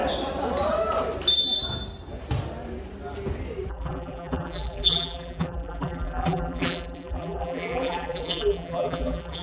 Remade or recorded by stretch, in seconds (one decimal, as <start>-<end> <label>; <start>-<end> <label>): 0.0-3.7 recorded; 3.7-9.4 remade